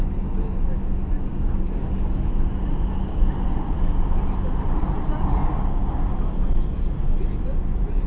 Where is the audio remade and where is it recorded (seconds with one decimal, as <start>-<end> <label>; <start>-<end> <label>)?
0.0-1.3 recorded; 1.3-2.3 remade; 2.3-8.1 recorded